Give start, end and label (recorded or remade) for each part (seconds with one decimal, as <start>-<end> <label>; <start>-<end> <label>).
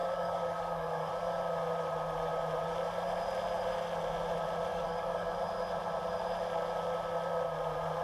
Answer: 0.0-1.1 remade; 1.1-4.7 recorded; 4.7-5.3 remade; 5.3-8.0 recorded